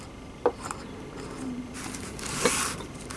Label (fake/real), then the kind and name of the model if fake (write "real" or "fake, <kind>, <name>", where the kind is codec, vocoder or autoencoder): real